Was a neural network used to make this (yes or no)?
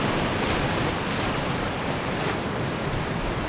no